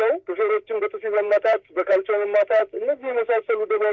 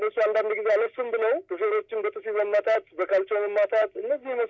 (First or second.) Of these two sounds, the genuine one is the second